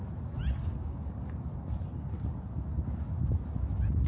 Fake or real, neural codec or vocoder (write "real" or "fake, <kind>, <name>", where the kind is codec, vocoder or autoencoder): real